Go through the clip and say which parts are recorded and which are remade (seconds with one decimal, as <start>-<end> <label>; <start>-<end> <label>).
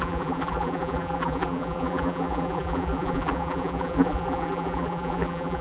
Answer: 0.0-5.6 remade